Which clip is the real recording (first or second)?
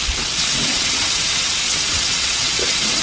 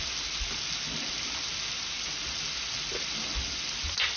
second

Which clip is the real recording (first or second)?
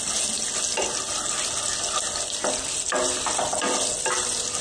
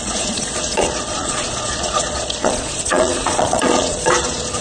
first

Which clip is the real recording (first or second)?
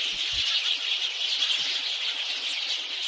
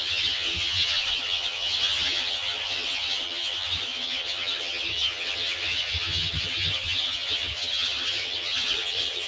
first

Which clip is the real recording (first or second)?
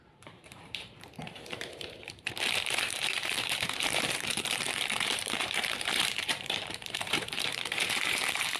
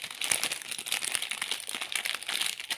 second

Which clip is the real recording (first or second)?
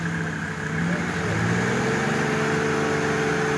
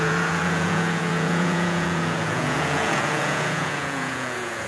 first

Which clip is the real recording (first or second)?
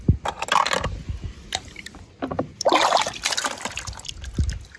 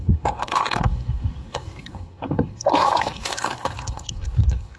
first